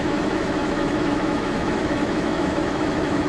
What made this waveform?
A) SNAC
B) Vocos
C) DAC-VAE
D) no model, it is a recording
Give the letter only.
C